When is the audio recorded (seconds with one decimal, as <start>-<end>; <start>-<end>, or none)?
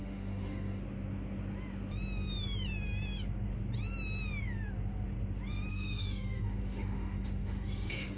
0.8-5.7